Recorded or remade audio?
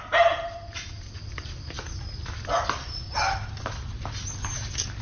recorded